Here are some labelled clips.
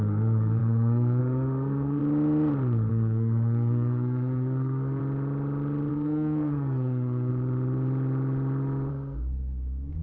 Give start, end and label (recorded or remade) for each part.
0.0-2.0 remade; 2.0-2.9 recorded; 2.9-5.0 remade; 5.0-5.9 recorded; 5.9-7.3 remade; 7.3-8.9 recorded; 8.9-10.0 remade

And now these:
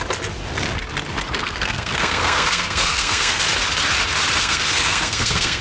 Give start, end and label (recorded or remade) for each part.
0.0-1.4 recorded; 1.4-3.4 remade; 3.4-4.4 recorded; 4.4-5.6 remade

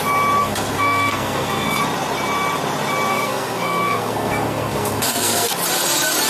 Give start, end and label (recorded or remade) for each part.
0.0-0.4 recorded; 0.4-1.8 remade; 1.8-3.1 recorded; 3.1-5.5 remade; 5.5-6.3 recorded

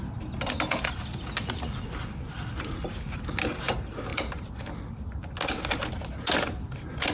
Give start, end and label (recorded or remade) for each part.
0.0-7.1 recorded

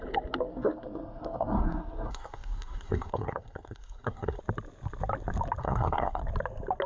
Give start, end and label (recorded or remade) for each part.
0.0-0.5 recorded; 0.5-4.4 remade; 4.4-5.6 recorded; 5.6-6.2 remade; 6.2-6.9 recorded